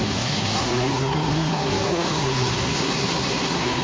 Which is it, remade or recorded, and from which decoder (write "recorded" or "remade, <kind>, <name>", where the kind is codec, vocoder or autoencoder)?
remade, codec, SNAC